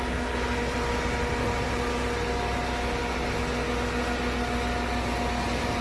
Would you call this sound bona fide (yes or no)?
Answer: yes